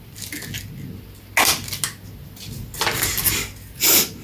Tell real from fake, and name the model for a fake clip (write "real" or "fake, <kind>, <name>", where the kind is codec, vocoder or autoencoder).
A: real